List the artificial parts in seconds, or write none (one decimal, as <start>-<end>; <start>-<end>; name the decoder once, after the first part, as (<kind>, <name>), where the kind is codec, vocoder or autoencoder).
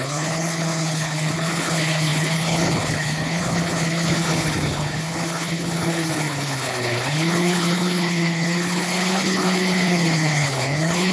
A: 0.0-11.1 (codec, HILCodec)